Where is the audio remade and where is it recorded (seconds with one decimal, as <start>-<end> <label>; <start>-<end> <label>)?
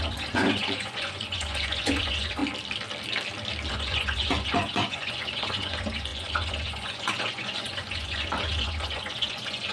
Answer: 0.0-2.4 remade; 2.4-3.7 recorded; 3.7-9.7 remade